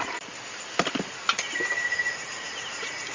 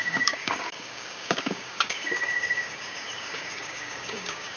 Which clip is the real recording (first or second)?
first